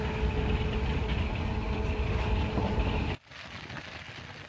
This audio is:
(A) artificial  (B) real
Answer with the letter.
B